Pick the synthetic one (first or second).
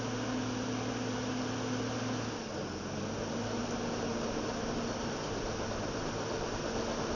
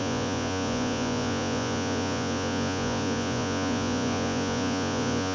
second